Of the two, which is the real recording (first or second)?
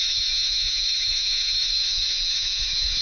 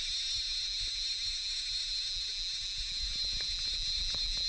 second